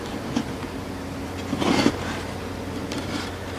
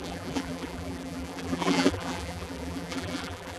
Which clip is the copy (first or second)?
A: second